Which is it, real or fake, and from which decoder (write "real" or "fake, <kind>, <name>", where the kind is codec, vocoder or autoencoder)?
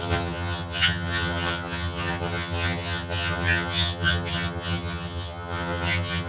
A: fake, vocoder, HiFi-GAN